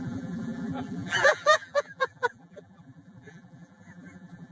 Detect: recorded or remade remade